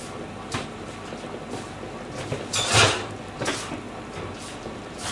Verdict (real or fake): real